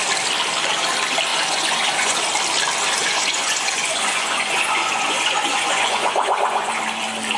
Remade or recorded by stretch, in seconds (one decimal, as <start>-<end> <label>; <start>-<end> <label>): 0.0-1.3 recorded; 1.3-2.2 remade; 2.2-3.0 recorded; 3.0-6.8 remade; 6.8-7.4 recorded